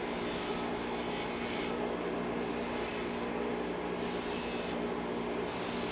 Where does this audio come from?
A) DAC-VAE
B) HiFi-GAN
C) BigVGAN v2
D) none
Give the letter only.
D